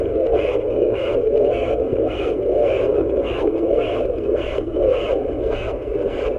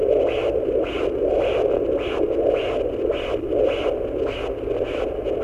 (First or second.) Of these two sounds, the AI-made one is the first